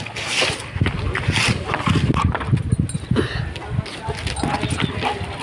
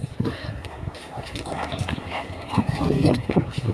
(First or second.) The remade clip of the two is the second